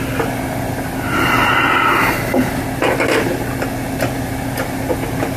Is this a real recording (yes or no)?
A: yes